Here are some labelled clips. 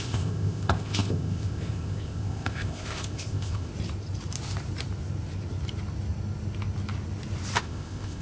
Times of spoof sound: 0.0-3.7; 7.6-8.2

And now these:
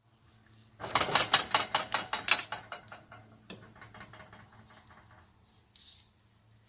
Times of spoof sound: none